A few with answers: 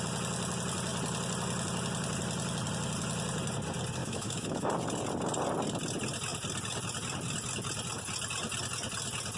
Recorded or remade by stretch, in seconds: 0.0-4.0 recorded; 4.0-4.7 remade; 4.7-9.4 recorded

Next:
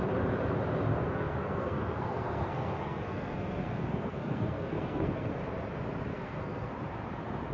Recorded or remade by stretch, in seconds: 0.0-0.9 recorded; 0.9-5.4 remade; 5.4-6.1 recorded; 6.1-6.7 remade; 6.7-7.5 recorded